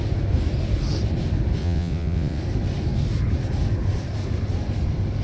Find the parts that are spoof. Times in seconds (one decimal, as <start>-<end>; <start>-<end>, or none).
1.6-2.4